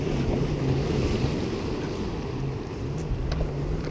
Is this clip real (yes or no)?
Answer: yes